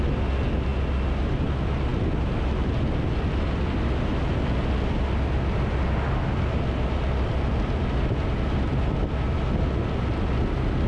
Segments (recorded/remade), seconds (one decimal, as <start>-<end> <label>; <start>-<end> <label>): 0.0-10.9 recorded